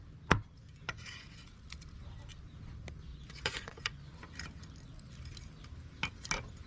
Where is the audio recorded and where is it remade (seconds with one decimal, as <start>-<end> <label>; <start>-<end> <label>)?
0.0-0.6 recorded; 0.6-1.5 remade; 1.5-3.1 recorded; 3.1-4.1 remade; 4.1-6.7 recorded